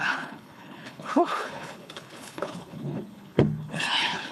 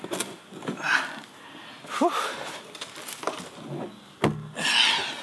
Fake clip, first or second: first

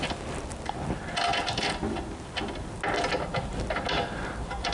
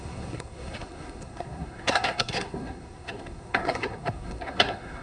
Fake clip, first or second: second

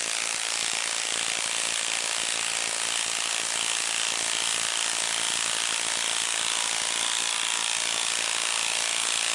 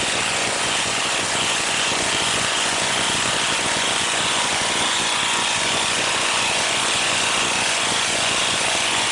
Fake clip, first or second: second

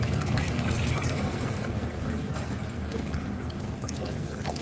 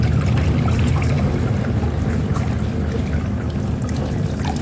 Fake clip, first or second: first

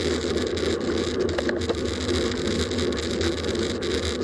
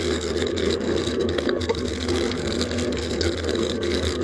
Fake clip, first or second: second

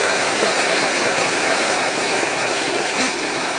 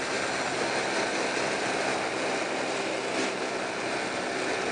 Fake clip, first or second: first